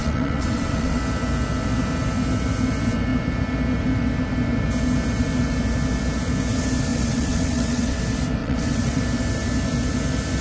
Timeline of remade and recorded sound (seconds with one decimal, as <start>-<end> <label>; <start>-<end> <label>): 0.0-1.0 remade; 1.0-6.9 recorded; 6.9-8.0 remade; 8.0-8.4 recorded; 8.4-9.0 remade; 9.0-10.4 recorded

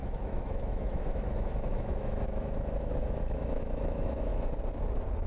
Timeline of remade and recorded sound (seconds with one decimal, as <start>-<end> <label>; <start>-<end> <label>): 0.0-4.3 remade; 4.3-5.3 recorded

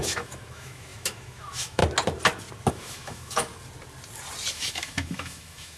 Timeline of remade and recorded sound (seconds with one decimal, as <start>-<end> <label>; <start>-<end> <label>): 0.0-1.8 remade; 1.8-2.7 recorded; 2.7-3.5 remade; 3.5-4.5 recorded; 4.5-5.8 remade

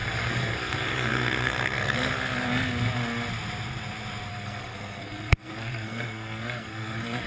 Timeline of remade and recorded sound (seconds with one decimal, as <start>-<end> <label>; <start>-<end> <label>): 0.0-2.1 remade; 2.1-4.3 recorded; 4.3-7.3 remade

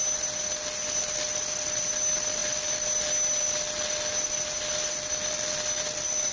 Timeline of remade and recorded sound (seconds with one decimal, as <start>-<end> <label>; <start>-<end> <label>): 0.0-6.3 recorded